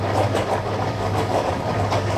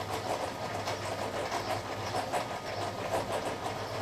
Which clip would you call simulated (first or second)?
first